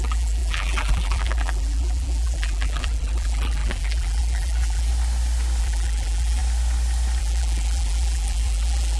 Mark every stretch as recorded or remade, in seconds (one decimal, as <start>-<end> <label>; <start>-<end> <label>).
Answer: 0.0-4.9 remade; 4.9-5.6 recorded; 5.6-6.4 remade; 6.4-7.2 recorded; 7.2-9.0 remade